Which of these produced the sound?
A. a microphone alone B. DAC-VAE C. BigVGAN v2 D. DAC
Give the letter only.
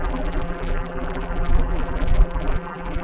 C